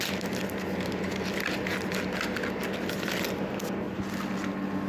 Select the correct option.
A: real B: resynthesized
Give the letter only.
A